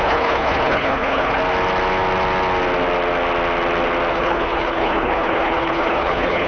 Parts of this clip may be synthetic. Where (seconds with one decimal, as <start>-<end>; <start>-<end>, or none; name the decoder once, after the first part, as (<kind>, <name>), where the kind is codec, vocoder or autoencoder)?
0.0-1.4 (codec, HILCodec); 4.1-6.5